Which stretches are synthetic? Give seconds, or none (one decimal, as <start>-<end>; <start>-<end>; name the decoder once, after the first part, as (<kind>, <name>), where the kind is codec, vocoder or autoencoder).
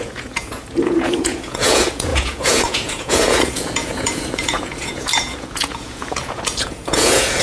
0.0-7.4 (vocoder, Vocos)